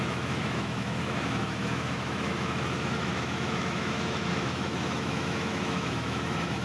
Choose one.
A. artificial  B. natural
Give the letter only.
A